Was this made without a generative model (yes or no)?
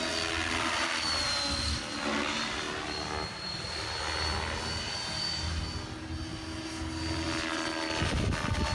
yes